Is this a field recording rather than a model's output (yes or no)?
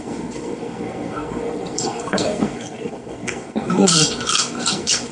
no